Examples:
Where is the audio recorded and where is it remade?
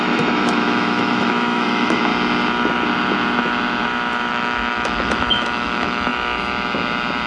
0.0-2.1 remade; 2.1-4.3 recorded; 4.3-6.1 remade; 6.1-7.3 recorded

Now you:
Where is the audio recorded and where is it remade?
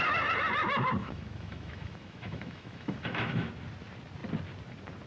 0.0-1.0 recorded; 1.0-3.5 remade; 3.5-5.1 recorded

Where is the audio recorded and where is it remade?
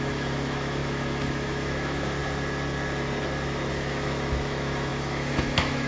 0.0-2.2 remade; 2.2-3.7 recorded; 3.7-5.9 remade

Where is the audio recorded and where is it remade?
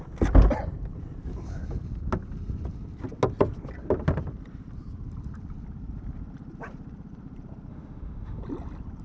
0.0-7.7 recorded; 7.7-8.4 remade; 8.4-9.0 recorded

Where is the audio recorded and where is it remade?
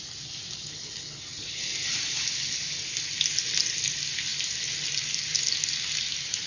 0.0-6.5 recorded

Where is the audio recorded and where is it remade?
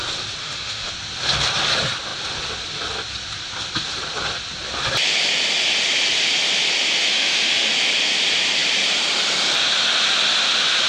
0.0-0.4 recorded; 0.4-0.9 remade; 0.9-7.1 recorded; 7.1-7.7 remade; 7.7-10.9 recorded